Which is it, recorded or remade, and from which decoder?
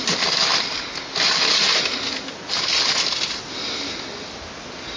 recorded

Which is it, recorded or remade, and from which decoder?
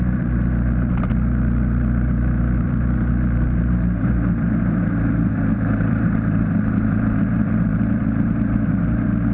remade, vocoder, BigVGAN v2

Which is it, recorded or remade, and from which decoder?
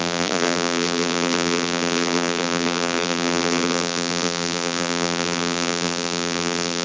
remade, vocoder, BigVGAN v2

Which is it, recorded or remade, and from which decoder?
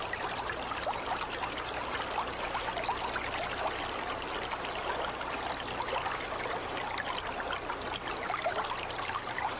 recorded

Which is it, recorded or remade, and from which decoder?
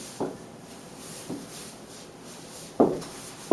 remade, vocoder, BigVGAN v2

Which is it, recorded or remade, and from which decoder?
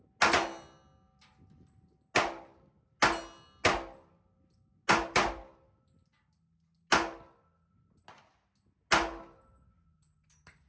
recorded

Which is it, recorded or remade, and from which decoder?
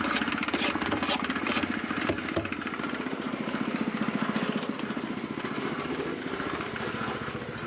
remade, vocoder, BigVGAN v2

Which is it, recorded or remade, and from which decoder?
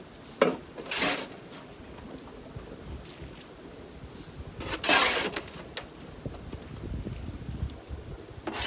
recorded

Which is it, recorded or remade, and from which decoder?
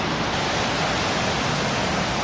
recorded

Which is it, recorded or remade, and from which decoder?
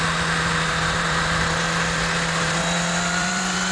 remade, vocoder, BigVGAN v2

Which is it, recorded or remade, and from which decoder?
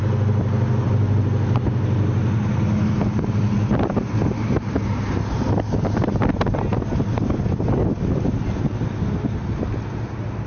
recorded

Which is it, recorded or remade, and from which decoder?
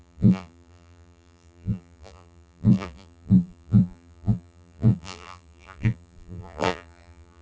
remade, vocoder, BigVGAN v2